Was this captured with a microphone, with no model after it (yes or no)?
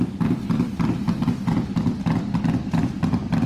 yes